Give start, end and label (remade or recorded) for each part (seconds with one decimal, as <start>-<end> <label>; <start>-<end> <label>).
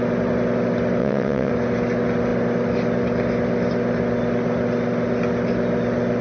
0.0-1.0 recorded; 1.0-1.5 remade; 1.5-6.2 recorded